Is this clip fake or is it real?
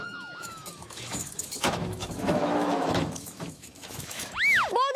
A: fake